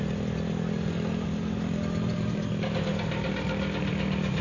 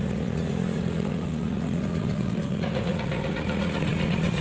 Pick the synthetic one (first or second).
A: second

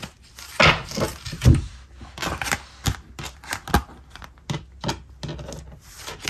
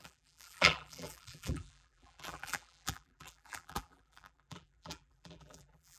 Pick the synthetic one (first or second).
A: second